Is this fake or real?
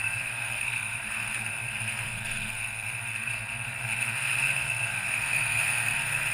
fake